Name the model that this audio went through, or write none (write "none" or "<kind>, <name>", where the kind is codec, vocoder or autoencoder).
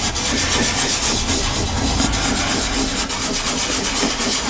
none